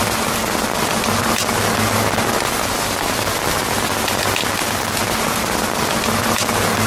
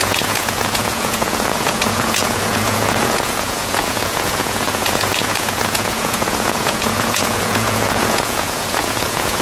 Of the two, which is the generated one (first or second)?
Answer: second